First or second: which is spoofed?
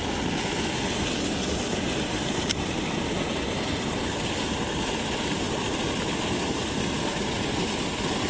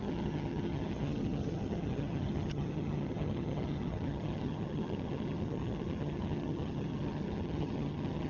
second